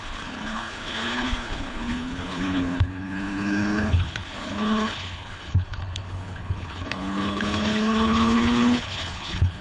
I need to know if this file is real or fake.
fake